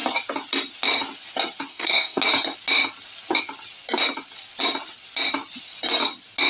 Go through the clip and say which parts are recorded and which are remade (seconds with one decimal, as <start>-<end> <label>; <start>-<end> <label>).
0.0-1.7 recorded; 1.7-2.2 remade; 2.2-6.5 recorded